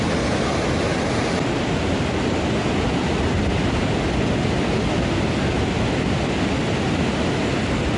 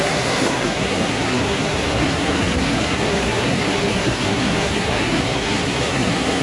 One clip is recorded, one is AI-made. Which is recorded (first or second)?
first